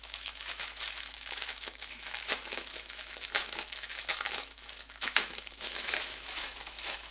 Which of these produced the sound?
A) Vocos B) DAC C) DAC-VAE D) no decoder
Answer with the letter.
C